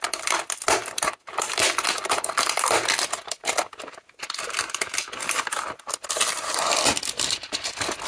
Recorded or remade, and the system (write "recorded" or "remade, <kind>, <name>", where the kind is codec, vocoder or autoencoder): recorded